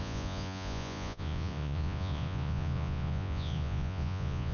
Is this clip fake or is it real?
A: fake